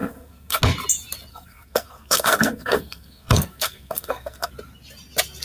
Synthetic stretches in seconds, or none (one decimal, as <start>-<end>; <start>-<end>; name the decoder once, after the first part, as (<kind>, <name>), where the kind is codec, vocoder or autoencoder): 0.0-0.6 (codec, SNAC); 1.3-4.5